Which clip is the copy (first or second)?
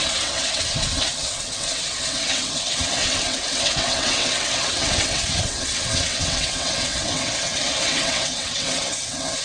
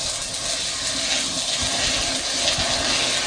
first